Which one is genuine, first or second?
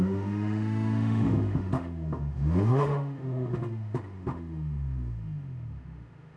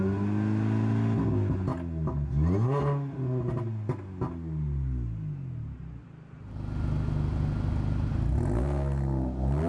second